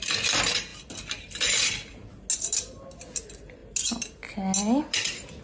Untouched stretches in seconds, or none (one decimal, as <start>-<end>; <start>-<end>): 0.0-5.4